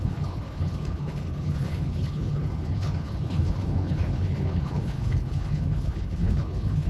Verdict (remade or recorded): remade